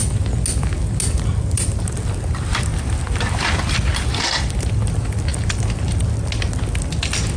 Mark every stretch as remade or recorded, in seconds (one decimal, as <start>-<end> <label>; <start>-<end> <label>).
0.0-7.4 recorded